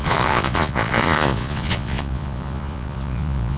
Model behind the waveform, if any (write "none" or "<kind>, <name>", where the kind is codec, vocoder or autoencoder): vocoder, Vocos